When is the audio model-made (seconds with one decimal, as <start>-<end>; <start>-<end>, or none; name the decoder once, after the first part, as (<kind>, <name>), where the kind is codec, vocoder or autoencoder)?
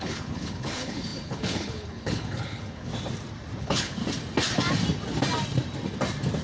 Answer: 0.0-2.9 (codec, HILCodec); 3.6-4.0